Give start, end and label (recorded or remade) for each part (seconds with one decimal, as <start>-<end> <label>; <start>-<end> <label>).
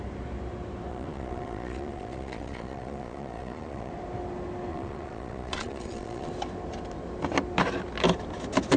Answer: 0.0-0.9 recorded; 0.9-3.9 remade; 3.9-4.7 recorded; 4.7-6.3 remade; 6.3-8.8 recorded